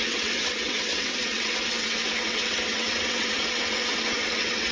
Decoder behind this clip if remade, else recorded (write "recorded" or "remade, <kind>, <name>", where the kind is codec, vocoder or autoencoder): remade, vocoder, WaveNeXt